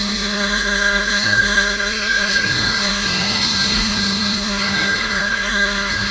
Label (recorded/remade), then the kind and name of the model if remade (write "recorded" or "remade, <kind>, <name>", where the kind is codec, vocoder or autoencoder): remade, codec, SNAC